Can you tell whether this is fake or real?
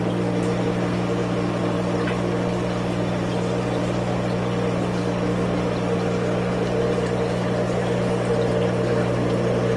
real